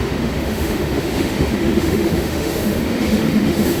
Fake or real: fake